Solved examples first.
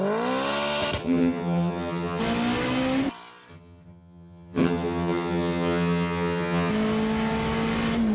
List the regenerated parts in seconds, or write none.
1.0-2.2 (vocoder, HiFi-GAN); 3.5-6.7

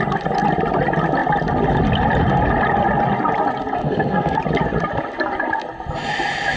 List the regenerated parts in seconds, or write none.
3.8-4.4 (codec, SNAC)

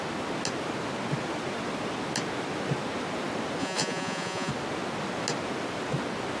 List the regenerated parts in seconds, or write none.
3.6-4.5 (vocoder, Vocos)

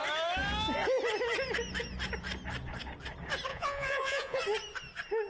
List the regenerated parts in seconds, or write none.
3.5-4.4 (vocoder, Vocos)

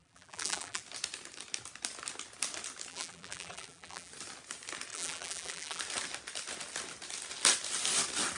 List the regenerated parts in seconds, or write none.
0.0-0.8 (vocoder, BigVGAN v2); 2.9-4.1; 4.9-5.8

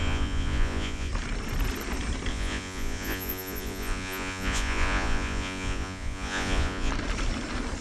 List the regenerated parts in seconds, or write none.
0.0-1.1 (vocoder, Vocos); 2.3-6.9

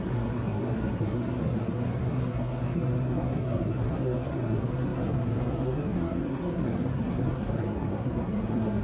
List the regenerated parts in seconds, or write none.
0.0-8.8 (codec, SNAC)

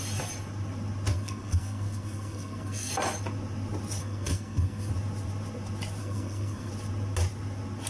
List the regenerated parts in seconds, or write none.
1.1-2.9 (codec, SNAC); 4.0-4.9; 6.0-6.7